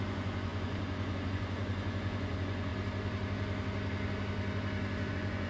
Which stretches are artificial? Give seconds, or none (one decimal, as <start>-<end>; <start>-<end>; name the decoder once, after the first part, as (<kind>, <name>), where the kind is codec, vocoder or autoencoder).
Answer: 0.0-2.7 (vocoder, Vocos); 5.1-5.5